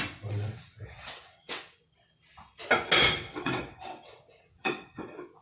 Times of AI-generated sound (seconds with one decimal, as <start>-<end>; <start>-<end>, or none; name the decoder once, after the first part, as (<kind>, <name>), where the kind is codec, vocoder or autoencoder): 0.0-1.8 (vocoder, WaveNeXt); 3.2-5.4